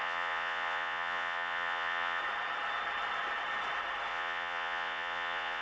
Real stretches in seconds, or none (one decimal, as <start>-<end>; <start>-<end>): 2.2-4.1

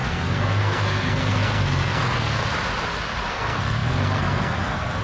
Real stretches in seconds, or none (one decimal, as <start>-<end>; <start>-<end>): 2.4-3.3

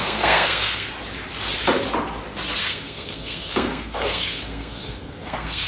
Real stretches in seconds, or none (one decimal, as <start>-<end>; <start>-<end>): 0.9-2.6

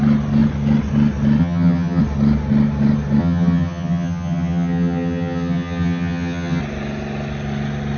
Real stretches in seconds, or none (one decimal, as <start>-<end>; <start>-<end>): 0.0-1.4; 2.0-3.2; 6.6-8.0

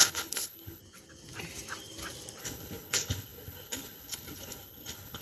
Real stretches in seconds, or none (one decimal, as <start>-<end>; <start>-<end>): 0.8-2.4